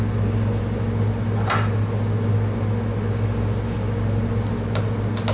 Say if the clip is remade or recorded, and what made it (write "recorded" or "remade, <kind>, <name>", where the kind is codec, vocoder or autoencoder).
recorded